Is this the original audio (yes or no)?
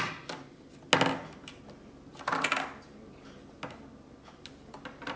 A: yes